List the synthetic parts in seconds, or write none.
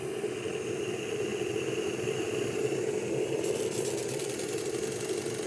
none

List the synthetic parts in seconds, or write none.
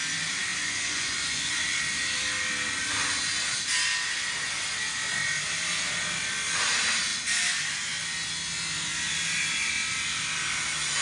0.5-1.5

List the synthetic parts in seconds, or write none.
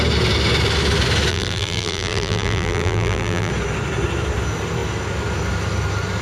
1.3-3.5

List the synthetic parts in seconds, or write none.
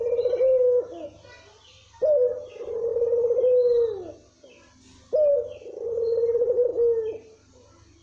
none